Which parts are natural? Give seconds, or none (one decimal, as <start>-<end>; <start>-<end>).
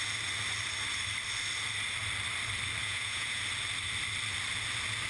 0.0-2.8; 3.4-5.1